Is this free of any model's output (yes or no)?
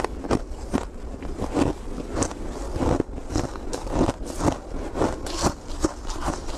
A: yes